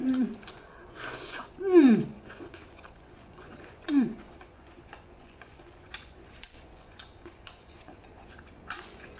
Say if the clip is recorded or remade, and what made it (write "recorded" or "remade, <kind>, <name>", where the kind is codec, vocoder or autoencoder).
remade, vocoder, Vocos